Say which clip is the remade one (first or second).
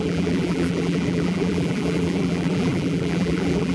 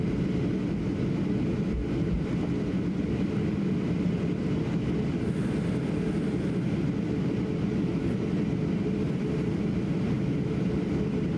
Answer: first